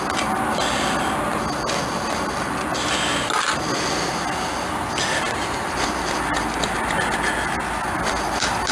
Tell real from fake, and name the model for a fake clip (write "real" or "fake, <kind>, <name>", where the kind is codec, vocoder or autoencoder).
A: real